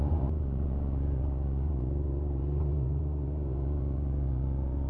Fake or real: fake